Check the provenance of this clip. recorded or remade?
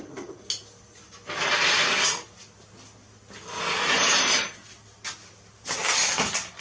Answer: recorded